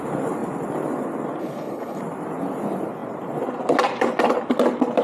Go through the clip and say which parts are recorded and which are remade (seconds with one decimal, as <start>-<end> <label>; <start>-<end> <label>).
0.0-1.4 recorded; 1.4-2.0 remade; 2.0-5.0 recorded